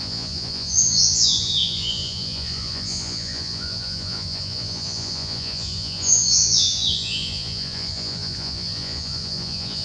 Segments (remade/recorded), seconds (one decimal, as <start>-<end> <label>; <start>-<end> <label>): 0.0-9.8 remade